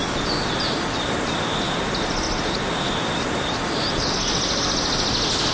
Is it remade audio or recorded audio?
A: recorded